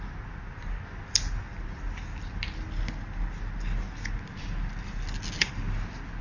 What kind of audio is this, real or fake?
real